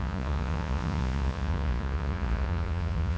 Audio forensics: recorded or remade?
remade